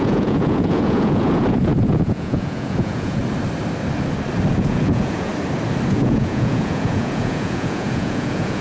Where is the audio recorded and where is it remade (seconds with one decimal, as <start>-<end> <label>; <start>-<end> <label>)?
0.0-3.2 remade; 3.2-4.5 recorded; 4.5-5.3 remade; 5.3-5.9 recorded; 5.9-8.6 remade